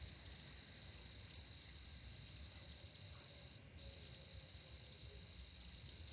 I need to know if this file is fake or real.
real